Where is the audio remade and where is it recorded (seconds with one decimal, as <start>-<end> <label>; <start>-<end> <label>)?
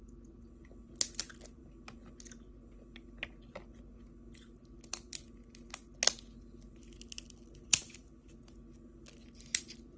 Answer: 0.0-10.0 recorded